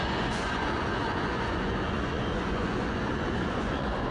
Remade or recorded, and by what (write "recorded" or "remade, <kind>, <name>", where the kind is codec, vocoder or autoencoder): remade, vocoder, Vocos